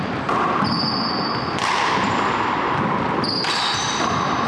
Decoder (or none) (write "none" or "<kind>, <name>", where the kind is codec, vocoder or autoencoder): none